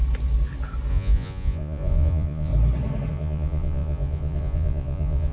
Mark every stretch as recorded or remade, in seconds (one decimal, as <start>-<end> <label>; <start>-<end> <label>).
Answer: 0.0-0.9 recorded; 0.9-2.5 remade; 2.5-3.1 recorded; 3.1-5.3 remade